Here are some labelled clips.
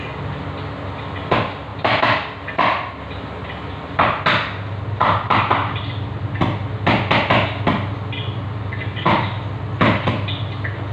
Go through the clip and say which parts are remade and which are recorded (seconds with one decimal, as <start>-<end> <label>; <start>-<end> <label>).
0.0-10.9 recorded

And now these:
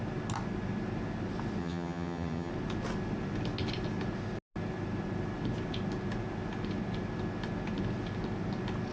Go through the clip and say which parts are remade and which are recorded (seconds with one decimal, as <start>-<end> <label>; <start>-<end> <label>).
0.0-1.6 recorded; 1.6-2.5 remade; 2.5-8.9 recorded

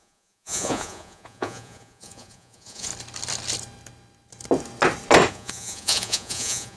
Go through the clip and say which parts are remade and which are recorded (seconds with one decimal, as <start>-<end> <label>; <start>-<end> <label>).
0.0-2.9 remade; 2.9-5.3 recorded; 5.3-6.8 remade

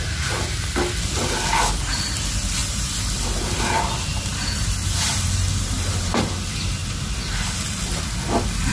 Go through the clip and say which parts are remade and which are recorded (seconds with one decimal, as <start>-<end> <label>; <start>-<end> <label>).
0.0-2.6 recorded; 2.6-3.2 remade; 3.2-4.1 recorded; 4.1-6.3 remade; 6.3-8.7 recorded

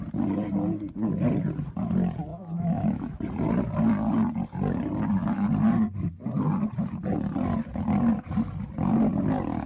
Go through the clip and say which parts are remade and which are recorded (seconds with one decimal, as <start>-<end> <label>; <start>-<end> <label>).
0.0-2.3 recorded; 2.3-3.2 remade; 3.2-9.7 recorded

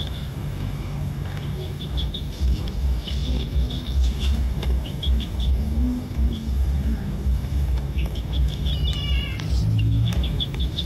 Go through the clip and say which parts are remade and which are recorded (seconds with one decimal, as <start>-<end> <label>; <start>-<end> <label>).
0.0-8.7 remade; 8.7-9.8 recorded; 9.8-10.9 remade